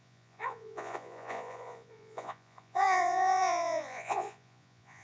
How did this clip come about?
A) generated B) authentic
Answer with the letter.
A